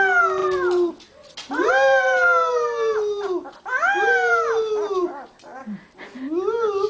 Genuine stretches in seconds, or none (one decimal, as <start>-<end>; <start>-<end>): 0.0-6.9